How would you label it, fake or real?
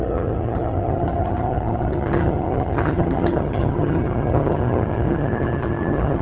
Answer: fake